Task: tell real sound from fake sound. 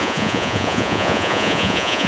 fake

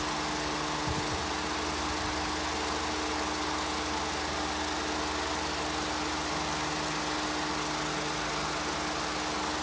real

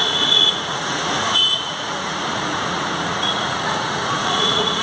fake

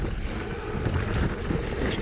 real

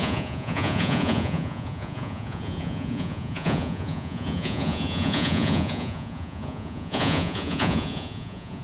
fake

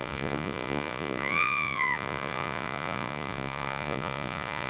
fake